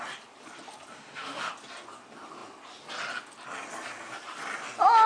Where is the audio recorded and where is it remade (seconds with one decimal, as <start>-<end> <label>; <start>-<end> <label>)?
0.0-0.9 recorded; 0.9-1.5 remade; 1.5-5.1 recorded

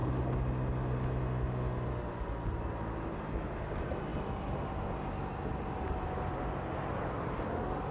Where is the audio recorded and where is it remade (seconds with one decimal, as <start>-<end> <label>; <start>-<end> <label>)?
0.0-7.9 recorded

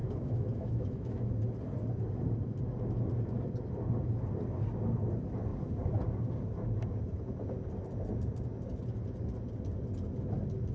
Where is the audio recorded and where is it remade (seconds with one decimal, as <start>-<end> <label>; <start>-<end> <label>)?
0.0-1.3 remade; 1.3-10.7 recorded

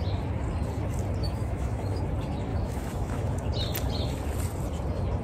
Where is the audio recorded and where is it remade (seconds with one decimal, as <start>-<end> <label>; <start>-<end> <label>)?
0.0-1.2 recorded; 1.2-2.0 remade; 2.0-2.5 recorded; 2.5-3.3 remade; 3.3-5.2 recorded

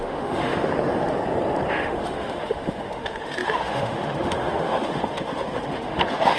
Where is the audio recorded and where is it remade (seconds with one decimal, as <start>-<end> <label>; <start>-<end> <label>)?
0.0-0.7 remade; 0.7-1.7 recorded; 1.7-6.4 remade

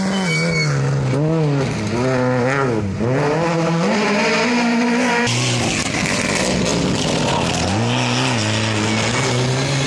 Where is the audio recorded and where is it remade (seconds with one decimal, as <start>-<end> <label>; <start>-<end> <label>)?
0.0-9.9 recorded